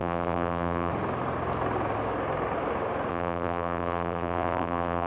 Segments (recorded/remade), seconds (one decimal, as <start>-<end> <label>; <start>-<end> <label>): 0.0-0.9 remade; 0.9-3.1 recorded; 3.1-5.1 remade